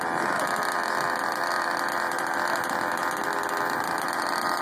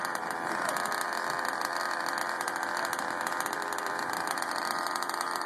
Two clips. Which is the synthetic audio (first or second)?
second